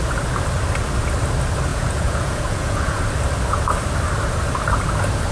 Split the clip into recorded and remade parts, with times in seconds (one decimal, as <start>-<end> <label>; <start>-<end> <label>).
0.0-1.7 recorded; 1.7-3.0 remade; 3.0-5.3 recorded